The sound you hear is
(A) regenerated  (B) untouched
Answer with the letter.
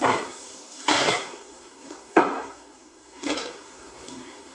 A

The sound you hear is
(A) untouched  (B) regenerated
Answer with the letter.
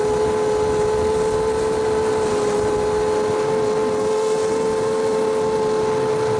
A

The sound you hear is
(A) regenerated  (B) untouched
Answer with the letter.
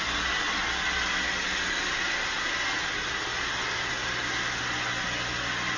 B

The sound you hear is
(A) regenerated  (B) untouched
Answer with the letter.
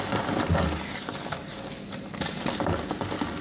B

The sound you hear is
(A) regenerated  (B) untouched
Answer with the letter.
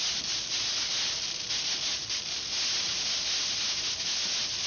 B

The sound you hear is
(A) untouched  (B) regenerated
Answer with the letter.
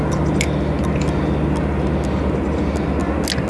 A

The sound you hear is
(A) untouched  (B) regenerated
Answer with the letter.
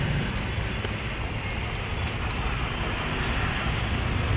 A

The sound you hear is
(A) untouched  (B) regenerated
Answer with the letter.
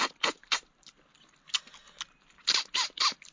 A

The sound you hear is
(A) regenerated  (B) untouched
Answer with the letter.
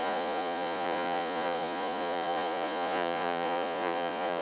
A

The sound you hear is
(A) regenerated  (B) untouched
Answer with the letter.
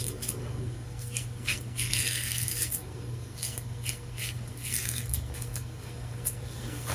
A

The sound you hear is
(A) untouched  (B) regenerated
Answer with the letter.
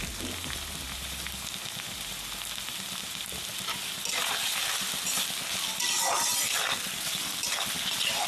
A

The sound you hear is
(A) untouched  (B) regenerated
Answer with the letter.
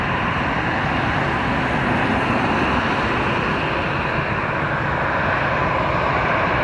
A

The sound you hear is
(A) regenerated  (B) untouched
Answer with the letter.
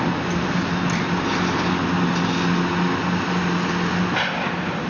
B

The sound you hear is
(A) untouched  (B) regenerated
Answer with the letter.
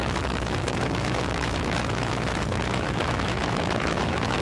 B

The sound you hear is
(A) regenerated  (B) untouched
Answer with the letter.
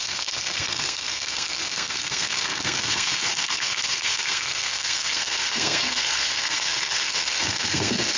A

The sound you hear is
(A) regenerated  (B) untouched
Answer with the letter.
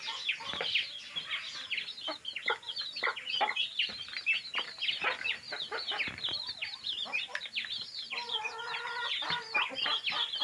B